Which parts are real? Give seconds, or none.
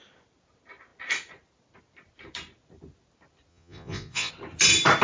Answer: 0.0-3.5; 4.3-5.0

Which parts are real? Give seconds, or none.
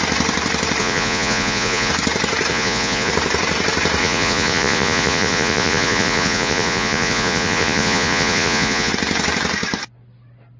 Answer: 0.0-0.8; 1.9-2.5; 3.1-4.0; 8.9-10.6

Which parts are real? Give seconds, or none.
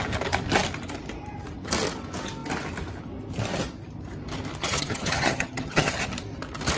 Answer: 0.0-4.6; 6.0-6.8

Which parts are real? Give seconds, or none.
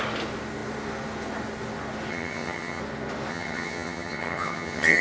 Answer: 0.0-2.1; 2.8-3.3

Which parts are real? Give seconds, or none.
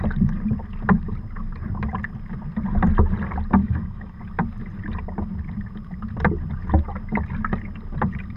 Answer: 0.0-3.6; 4.2-8.4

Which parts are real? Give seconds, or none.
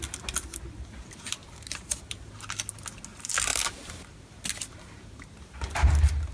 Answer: 0.0-1.4; 2.3-3.5; 4.0-6.3